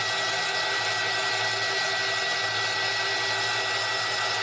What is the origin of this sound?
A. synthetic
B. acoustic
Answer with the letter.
B